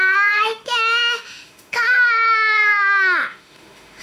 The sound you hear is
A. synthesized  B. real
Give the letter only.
A